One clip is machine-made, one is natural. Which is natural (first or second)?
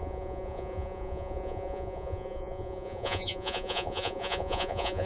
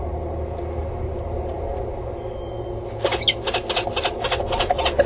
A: second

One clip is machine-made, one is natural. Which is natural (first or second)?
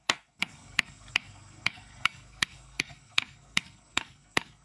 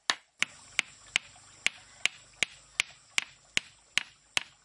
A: second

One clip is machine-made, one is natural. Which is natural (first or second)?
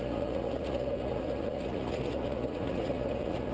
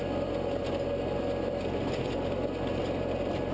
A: second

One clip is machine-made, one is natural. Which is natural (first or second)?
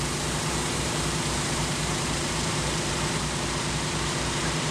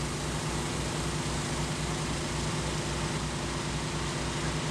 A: second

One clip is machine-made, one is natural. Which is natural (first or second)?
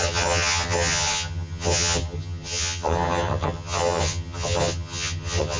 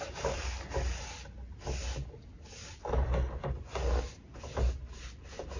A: second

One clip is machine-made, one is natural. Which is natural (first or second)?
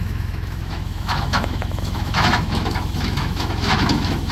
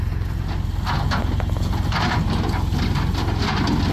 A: second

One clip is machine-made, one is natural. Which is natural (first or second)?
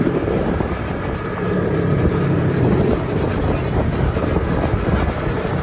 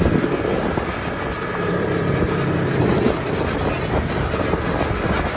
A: second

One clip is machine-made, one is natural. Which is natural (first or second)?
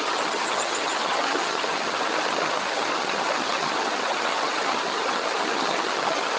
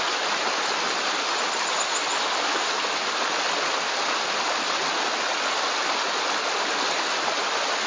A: second